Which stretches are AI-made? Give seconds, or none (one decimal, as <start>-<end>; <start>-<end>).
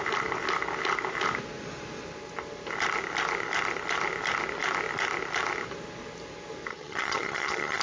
6.7-7.8